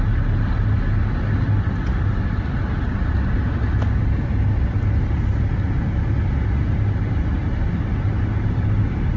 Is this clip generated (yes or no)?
no